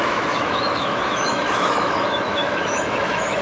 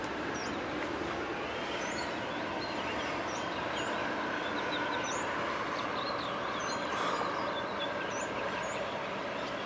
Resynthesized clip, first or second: first